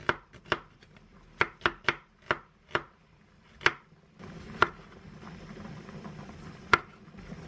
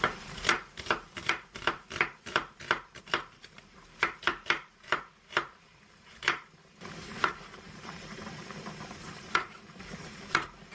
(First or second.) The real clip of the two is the first